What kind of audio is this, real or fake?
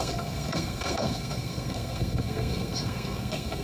fake